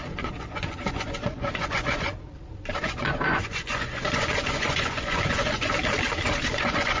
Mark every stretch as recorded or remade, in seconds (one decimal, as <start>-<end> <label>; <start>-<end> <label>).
0.0-2.1 remade; 2.1-2.8 recorded; 2.8-5.7 remade; 5.7-6.5 recorded; 6.5-7.0 remade